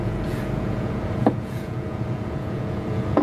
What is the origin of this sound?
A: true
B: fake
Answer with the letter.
B